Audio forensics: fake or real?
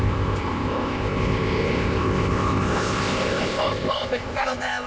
fake